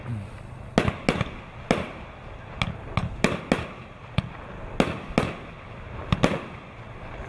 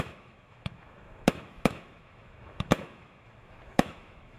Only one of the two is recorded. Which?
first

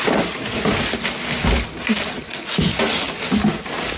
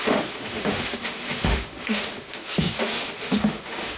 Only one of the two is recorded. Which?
first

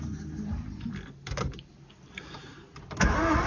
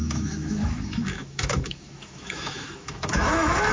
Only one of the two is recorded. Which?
first